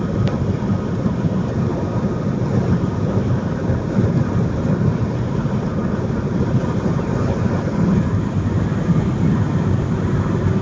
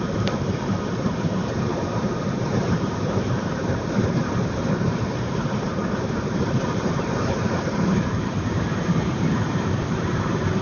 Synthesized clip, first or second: second